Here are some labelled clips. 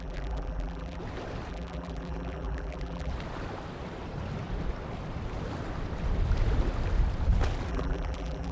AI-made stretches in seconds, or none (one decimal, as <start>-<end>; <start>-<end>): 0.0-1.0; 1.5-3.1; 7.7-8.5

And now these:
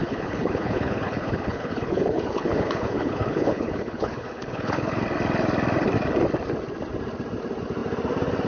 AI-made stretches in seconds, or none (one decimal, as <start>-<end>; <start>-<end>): 0.0-5.0

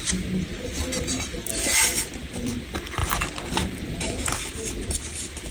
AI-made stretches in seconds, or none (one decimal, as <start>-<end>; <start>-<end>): 1.7-2.6

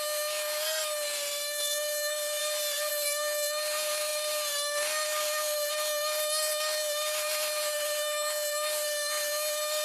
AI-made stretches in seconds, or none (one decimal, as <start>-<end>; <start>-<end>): 0.0-2.4; 2.9-9.8